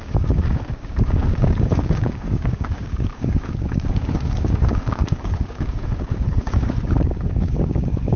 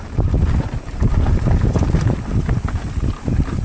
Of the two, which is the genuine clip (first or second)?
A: second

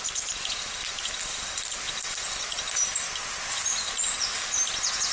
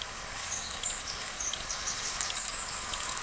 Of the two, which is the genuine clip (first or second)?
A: first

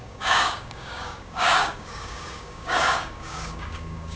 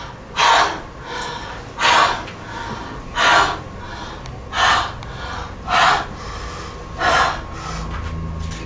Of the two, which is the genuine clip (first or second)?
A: second